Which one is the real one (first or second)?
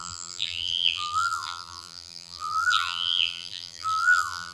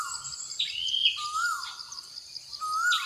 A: second